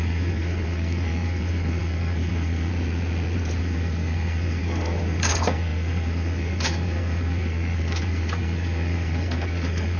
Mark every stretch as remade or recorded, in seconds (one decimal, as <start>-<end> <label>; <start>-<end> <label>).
0.0-2.7 remade; 2.7-3.6 recorded; 3.6-10.0 remade